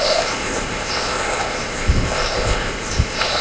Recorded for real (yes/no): no